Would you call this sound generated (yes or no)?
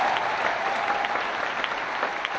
no